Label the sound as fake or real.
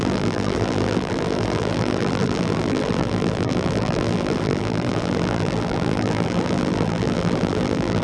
fake